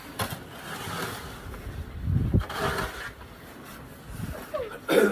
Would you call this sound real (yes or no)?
yes